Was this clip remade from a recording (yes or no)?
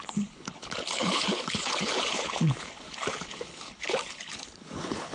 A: yes